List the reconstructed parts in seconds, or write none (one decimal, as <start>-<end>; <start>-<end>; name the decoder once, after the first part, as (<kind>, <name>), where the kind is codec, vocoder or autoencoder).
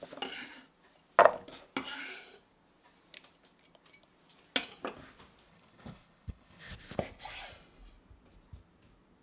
5.5-6.7 (codec, HILCodec)